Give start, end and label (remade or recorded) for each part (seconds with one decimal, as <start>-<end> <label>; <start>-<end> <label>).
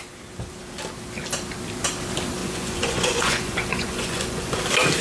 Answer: 0.0-2.4 recorded; 2.4-4.6 remade; 4.6-5.0 recorded